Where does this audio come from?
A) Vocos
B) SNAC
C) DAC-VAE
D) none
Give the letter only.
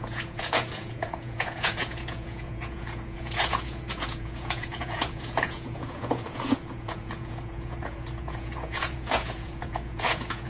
A